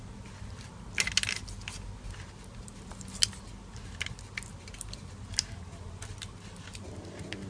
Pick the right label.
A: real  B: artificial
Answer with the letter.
A